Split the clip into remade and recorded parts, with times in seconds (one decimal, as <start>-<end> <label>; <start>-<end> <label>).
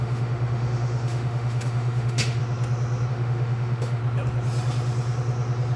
0.0-2.4 remade; 2.4-3.1 recorded; 3.1-4.0 remade; 4.0-5.8 recorded